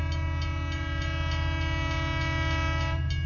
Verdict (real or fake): real